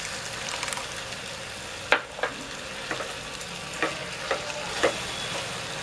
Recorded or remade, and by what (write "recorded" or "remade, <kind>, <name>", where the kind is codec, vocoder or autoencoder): recorded